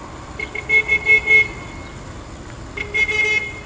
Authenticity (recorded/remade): recorded